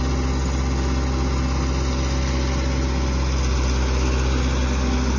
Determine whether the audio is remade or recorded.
recorded